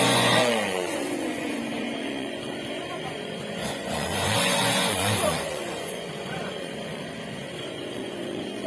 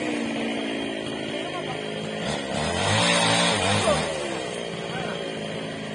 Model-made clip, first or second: first